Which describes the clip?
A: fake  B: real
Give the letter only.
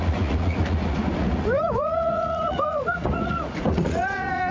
A